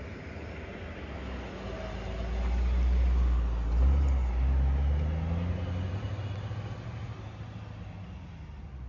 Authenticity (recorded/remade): recorded